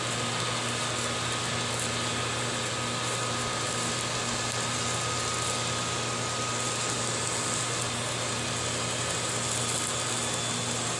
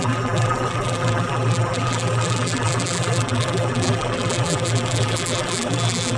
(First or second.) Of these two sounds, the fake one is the second